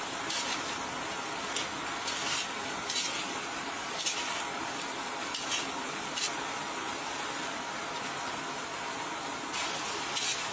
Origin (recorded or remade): recorded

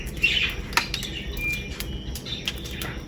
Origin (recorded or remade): recorded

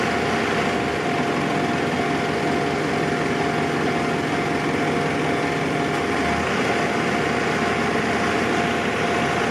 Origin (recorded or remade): recorded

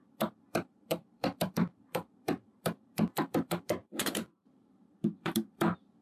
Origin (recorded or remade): remade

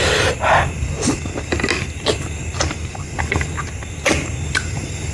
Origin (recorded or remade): recorded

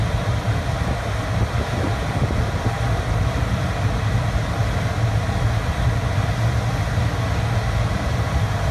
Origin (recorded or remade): recorded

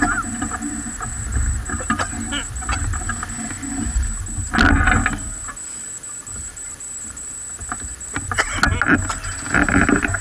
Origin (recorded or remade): recorded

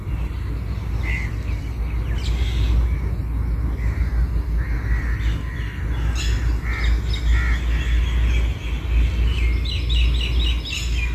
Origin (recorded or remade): recorded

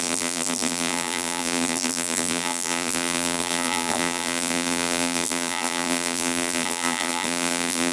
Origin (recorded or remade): remade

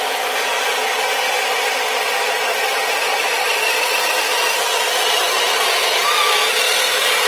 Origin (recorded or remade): remade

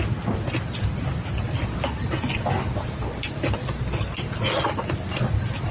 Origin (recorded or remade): recorded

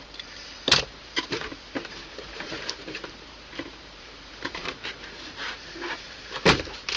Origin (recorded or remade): remade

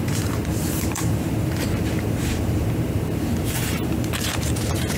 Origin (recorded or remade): remade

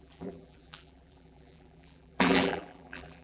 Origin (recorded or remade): remade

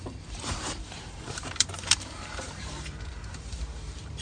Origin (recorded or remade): remade